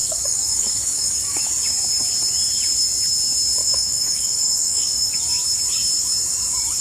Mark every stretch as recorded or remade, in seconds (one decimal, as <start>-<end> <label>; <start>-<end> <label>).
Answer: 0.0-1.4 remade; 1.4-3.6 recorded; 3.6-5.2 remade; 5.2-6.8 recorded